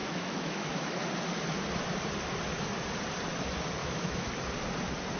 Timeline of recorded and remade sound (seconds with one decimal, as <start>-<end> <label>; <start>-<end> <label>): 0.0-1.0 remade; 1.0-3.8 recorded; 3.8-4.3 remade; 4.3-5.2 recorded